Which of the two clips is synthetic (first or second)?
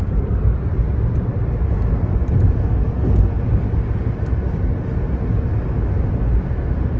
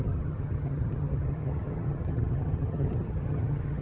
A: second